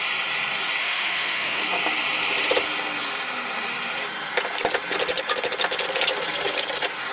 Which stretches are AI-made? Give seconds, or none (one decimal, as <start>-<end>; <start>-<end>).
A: 0.8-1.6